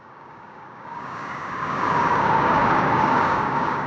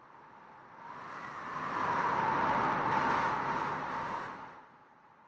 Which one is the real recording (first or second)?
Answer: second